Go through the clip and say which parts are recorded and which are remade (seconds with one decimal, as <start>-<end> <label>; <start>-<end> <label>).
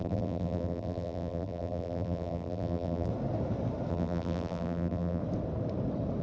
0.0-3.1 remade; 3.1-3.9 recorded; 3.9-5.2 remade; 5.2-6.2 recorded